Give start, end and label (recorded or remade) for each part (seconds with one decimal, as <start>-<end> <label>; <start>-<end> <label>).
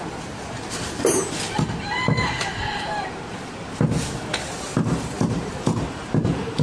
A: 0.0-4.7 recorded; 4.7-6.6 remade